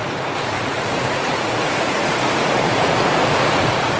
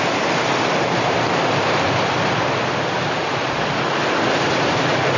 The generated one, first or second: first